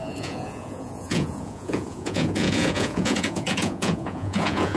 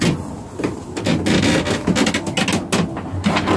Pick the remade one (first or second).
first